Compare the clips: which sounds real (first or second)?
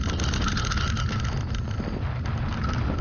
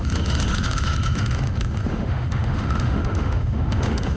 first